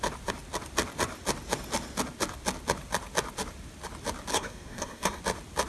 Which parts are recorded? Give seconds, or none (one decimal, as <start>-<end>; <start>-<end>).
0.0-4.3; 5.2-5.7